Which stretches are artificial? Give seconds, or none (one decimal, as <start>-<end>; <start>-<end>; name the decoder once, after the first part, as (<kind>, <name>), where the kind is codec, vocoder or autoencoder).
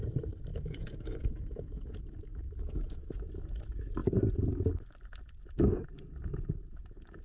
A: 0.5-3.3 (autoencoder, DAC-VAE)